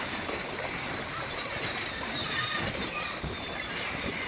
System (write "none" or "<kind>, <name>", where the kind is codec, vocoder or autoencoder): vocoder, BigVGAN v2